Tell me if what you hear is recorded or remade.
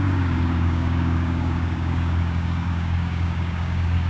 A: remade